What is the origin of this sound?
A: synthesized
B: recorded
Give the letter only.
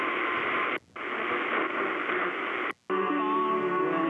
B